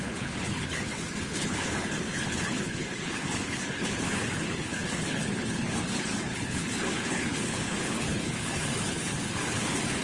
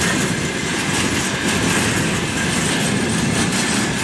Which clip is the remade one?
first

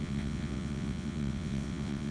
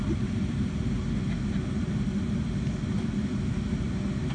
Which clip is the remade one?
first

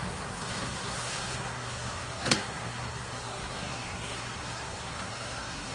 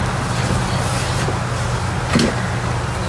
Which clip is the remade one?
first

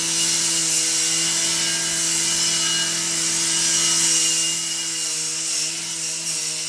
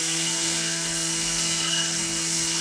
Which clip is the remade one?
second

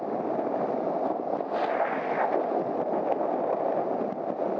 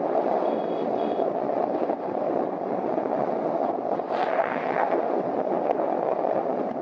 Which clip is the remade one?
second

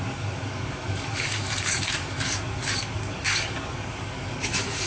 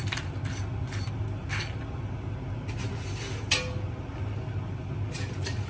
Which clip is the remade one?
first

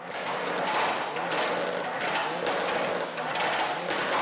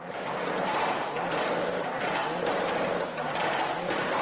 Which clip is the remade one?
second